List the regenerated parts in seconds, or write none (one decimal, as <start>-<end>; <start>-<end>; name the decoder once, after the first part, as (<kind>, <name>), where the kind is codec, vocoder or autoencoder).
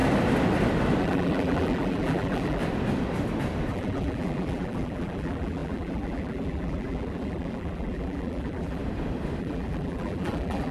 1.0-2.6 (vocoder, BigVGAN v2); 3.7-8.8; 9.4-10.7